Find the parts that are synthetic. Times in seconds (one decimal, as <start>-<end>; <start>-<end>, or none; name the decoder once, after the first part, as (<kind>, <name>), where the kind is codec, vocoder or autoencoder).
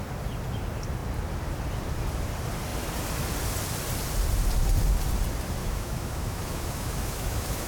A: 5.6-7.7 (autoencoder, DAC-VAE)